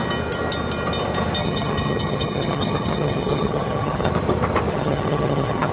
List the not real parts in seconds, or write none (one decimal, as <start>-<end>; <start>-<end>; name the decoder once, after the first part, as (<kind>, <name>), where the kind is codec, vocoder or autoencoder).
1.4-4.1 (vocoder, HiFi-GAN); 4.7-5.7